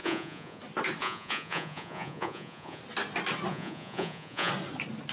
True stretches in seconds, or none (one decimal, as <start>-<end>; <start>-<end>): 0.6-1.0; 2.8-3.5; 4.5-5.1